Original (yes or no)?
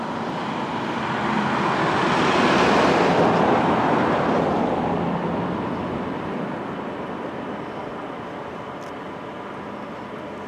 yes